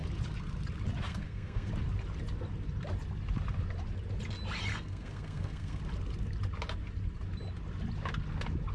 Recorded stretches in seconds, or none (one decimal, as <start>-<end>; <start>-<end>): 0.0-1.1; 1.7-4.7; 5.8-8.7